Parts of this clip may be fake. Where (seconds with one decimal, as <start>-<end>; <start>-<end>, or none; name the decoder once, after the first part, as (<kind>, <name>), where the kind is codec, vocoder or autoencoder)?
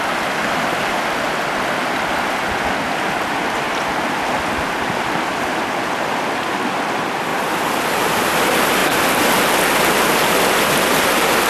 none